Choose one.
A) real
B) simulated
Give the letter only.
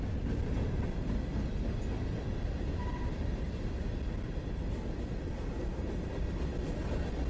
A